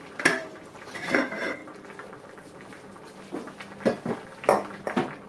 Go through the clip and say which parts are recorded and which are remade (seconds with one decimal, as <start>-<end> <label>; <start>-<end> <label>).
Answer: 0.0-1.6 remade; 1.6-4.8 recorded; 4.8-5.3 remade